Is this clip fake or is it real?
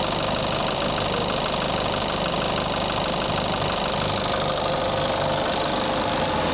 real